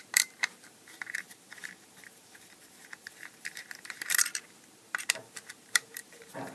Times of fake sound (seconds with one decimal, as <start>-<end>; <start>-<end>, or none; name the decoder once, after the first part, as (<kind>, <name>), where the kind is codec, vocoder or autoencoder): 0.0-6.5 (vocoder, BigVGAN v2)